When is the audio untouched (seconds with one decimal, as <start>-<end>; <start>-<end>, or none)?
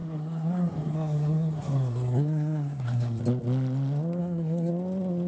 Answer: 3.2-4.2; 4.7-5.3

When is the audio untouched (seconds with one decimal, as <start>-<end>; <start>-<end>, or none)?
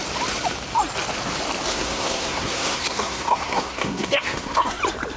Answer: 0.0-1.7; 4.8-5.2